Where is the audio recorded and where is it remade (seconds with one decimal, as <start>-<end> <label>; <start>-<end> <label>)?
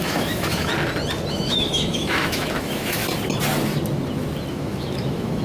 0.0-0.7 remade; 0.7-1.3 recorded; 1.3-3.0 remade; 3.0-4.5 recorded; 4.5-5.4 remade